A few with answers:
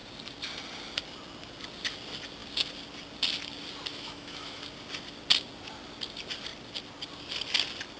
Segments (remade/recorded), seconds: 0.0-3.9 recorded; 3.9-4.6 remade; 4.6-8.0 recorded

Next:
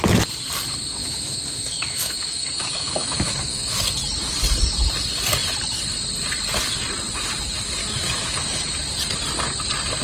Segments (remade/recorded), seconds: 0.0-1.0 recorded; 1.0-3.8 remade; 3.8-7.8 recorded; 7.8-8.8 remade; 8.8-10.0 recorded